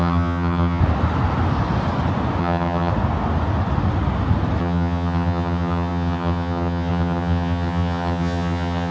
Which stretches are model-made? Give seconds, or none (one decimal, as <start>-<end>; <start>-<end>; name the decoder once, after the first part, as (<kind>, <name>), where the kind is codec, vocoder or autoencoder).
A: 0.0-0.8 (vocoder, HiFi-GAN); 2.4-2.9; 4.6-8.9